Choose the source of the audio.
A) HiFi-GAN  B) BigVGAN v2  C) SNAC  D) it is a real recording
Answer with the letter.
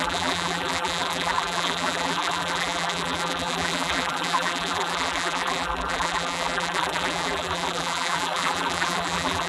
B